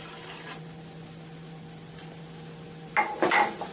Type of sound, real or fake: real